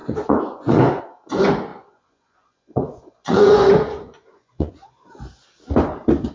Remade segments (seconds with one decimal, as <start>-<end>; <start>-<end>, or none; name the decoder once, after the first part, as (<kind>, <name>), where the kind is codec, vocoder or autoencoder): 0.0-1.0 (vocoder, Vocos); 1.7-5.1